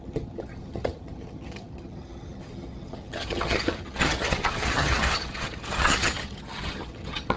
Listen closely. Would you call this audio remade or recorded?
remade